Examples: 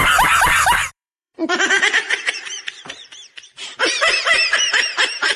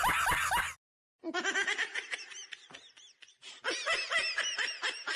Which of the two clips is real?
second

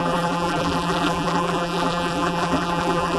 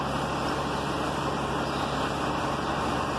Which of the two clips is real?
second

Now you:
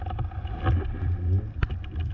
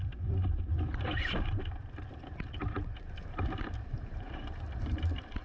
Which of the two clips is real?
first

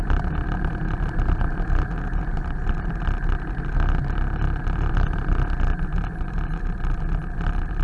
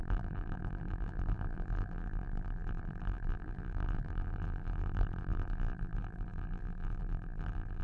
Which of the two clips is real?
first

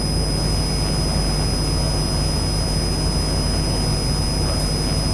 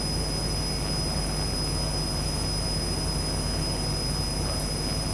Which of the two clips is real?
first